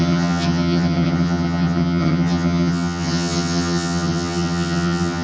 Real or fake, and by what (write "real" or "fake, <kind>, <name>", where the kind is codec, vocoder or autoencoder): fake, vocoder, HiFi-GAN